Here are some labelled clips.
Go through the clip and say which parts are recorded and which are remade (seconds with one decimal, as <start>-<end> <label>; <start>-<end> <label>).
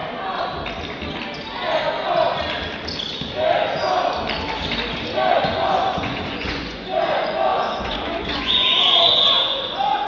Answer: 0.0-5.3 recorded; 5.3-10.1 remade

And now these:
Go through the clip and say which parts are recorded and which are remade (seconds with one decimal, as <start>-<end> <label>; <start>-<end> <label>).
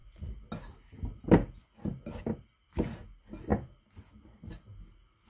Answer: 0.0-5.3 recorded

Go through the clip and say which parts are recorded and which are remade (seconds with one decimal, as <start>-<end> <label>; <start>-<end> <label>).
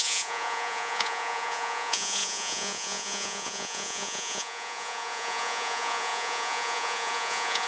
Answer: 0.0-7.7 remade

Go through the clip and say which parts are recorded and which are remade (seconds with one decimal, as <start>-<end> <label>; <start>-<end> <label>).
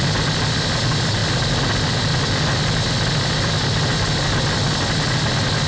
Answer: 0.0-5.7 recorded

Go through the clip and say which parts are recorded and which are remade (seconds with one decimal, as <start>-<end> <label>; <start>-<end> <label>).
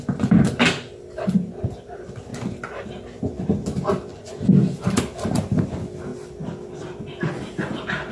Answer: 0.0-4.1 recorded; 4.1-4.9 remade; 4.9-8.1 recorded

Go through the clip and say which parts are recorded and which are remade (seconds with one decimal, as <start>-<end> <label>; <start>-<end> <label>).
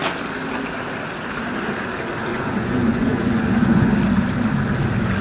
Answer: 0.0-2.3 recorded; 2.3-3.9 remade; 3.9-5.2 recorded